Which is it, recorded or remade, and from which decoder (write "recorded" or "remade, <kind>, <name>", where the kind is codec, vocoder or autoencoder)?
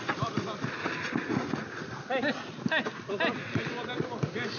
recorded